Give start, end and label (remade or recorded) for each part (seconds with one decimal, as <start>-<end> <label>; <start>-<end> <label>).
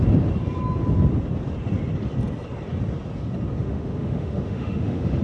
0.0-3.6 recorded; 3.6-5.2 remade